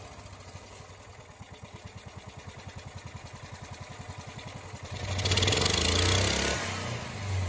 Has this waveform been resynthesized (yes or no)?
no